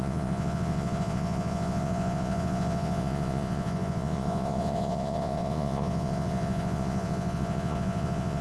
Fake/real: fake